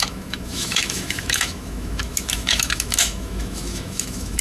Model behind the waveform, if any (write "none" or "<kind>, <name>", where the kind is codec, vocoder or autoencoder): autoencoder, DAC-VAE